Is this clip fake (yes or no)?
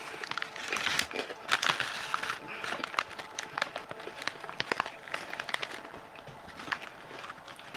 no